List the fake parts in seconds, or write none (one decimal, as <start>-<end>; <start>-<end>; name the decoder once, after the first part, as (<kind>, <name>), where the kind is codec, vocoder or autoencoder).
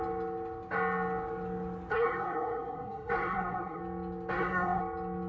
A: 1.9-3.8 (codec, SNAC); 4.3-4.8